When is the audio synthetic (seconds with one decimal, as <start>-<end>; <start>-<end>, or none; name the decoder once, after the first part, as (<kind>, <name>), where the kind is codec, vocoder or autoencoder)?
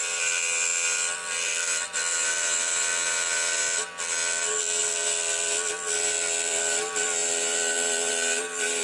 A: 0.0-8.8 (vocoder, BigVGAN v2)